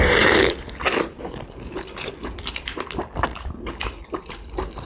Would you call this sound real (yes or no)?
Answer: no